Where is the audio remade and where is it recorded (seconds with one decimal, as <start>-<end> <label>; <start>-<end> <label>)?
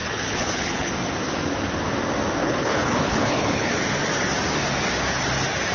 0.0-0.9 remade; 0.9-2.4 recorded; 2.4-3.8 remade; 3.8-5.7 recorded